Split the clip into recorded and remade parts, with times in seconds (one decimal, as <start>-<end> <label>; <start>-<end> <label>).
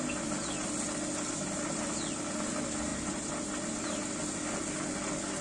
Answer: 0.0-5.4 recorded